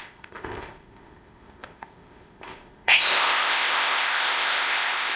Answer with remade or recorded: remade